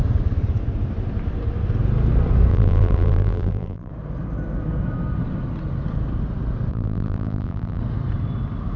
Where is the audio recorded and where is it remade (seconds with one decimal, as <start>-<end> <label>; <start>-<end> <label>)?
0.0-2.5 recorded; 2.5-3.9 remade; 3.9-6.7 recorded; 6.7-7.8 remade; 7.8-8.8 recorded